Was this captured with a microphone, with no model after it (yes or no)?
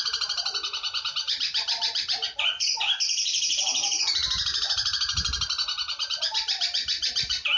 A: no